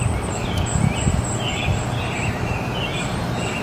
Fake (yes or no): no